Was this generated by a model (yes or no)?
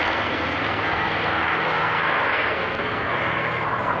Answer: yes